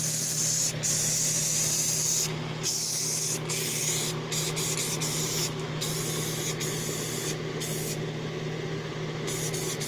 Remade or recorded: recorded